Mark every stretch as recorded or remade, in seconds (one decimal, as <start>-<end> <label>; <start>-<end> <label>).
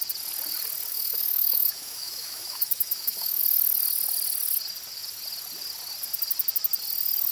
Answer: 0.0-0.9 recorded; 0.9-3.4 remade; 3.4-7.3 recorded